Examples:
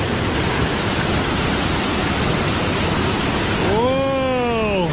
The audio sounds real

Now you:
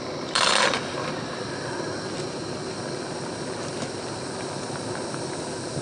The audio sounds real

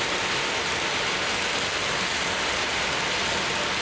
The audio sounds real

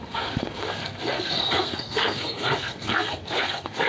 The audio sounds fake